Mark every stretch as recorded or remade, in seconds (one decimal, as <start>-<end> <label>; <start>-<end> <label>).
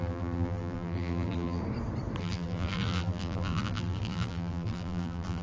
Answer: 0.0-1.6 remade; 1.6-2.2 recorded; 2.2-5.4 remade